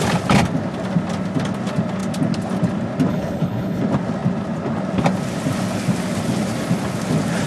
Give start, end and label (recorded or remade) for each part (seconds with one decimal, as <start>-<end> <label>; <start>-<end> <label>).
0.0-3.1 recorded; 3.1-3.8 remade; 3.8-7.5 recorded